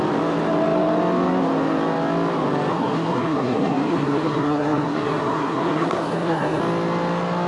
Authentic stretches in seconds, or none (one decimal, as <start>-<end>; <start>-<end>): 0.0-2.7; 6.6-7.5